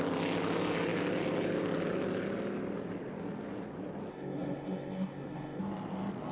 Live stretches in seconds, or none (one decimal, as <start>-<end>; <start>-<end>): 0.0-4.1; 5.6-6.3